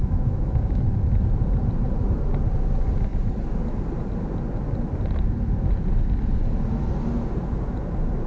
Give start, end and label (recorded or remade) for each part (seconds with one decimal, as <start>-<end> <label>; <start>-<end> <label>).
0.0-0.8 remade; 0.8-8.3 recorded